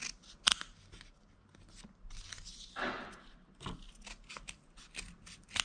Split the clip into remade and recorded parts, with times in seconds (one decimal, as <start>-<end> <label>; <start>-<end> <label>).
0.0-5.6 recorded